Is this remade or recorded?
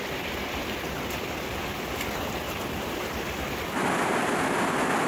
recorded